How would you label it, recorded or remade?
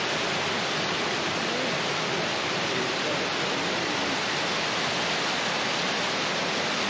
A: recorded